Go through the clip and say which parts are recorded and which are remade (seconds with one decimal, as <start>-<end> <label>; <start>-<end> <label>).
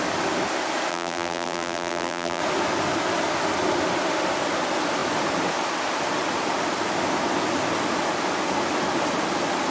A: 0.0-0.9 recorded; 0.9-2.4 remade; 2.4-9.7 recorded